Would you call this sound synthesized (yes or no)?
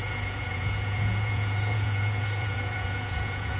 yes